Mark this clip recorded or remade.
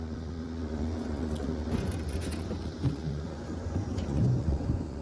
remade